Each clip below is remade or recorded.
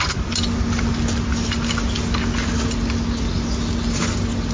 recorded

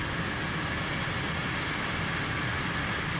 recorded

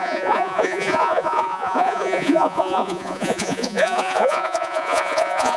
remade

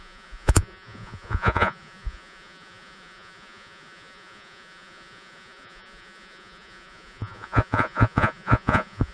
remade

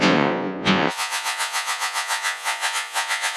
remade